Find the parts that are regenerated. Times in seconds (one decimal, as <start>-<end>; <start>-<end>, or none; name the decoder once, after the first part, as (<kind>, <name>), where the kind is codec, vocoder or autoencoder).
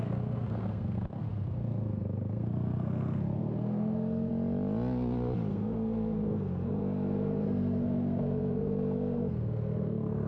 0.0-4.3 (codec, SNAC); 5.5-10.3